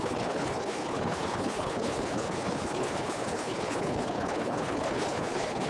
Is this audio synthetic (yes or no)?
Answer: yes